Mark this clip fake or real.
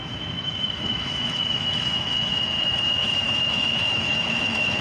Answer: fake